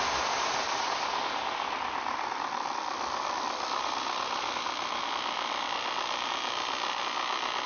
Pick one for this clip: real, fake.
real